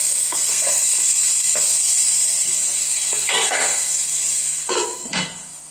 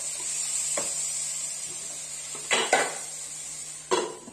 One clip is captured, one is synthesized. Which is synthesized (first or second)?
first